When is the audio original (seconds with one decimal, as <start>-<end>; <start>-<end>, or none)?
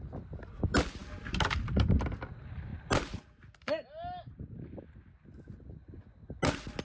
0.0-6.8